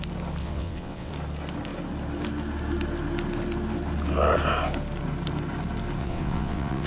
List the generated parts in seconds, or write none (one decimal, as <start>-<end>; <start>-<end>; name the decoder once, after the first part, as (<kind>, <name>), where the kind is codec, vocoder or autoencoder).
0.4-1.1 (vocoder, WaveNeXt); 6.0-6.9